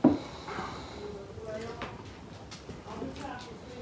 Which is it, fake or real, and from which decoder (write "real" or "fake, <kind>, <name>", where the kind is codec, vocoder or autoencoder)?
real